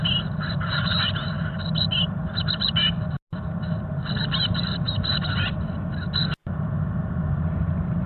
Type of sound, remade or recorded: recorded